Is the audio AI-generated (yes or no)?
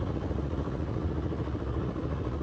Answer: yes